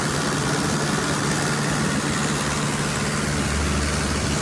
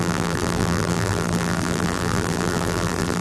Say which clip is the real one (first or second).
first